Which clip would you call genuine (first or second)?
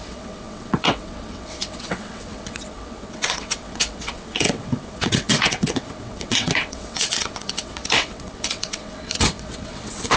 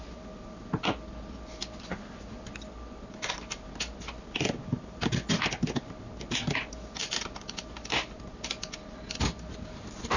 second